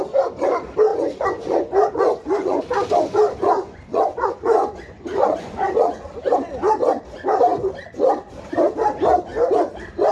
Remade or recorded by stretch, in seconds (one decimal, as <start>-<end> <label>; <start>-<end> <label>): 0.0-0.9 recorded; 0.9-2.6 remade; 2.6-3.4 recorded; 3.4-6.1 remade; 6.1-10.1 recorded